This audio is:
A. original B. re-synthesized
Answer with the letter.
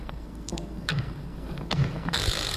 B